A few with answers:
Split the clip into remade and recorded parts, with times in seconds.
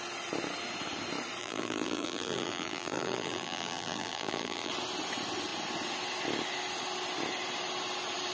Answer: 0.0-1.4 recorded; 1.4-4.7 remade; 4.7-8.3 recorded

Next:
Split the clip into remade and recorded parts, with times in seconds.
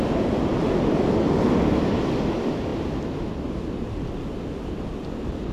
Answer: 0.0-5.5 recorded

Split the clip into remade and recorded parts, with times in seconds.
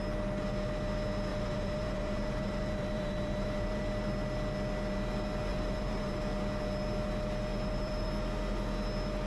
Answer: 0.0-1.3 recorded; 1.3-3.8 remade; 3.8-5.5 recorded; 5.5-6.2 remade; 6.2-7.5 recorded; 7.5-8.1 remade; 8.1-9.3 recorded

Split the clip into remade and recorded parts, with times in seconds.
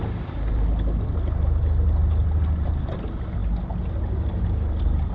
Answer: 0.0-5.1 recorded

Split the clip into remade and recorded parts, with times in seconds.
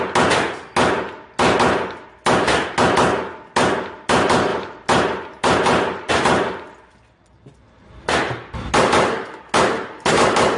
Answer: 0.0-4.5 recorded; 4.5-6.1 remade; 6.1-7.2 recorded; 7.2-8.1 remade; 8.1-10.6 recorded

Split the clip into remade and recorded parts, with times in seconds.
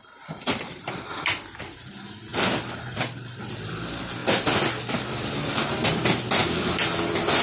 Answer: 0.0-2.3 remade; 2.3-2.9 recorded; 2.9-4.2 remade; 4.2-5.0 recorded; 5.0-6.4 remade; 6.4-7.4 recorded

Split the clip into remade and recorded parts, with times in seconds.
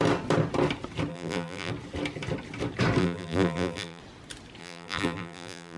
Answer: 0.0-1.1 recorded; 1.1-1.7 remade; 1.7-3.0 recorded; 3.0-4.0 remade; 4.0-4.6 recorded; 4.6-5.8 remade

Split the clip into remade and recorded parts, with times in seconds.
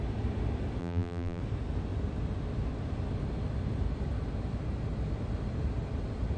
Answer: 0.0-0.8 recorded; 0.8-1.4 remade; 1.4-6.4 recorded